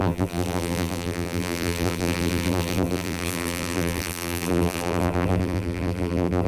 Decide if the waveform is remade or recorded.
remade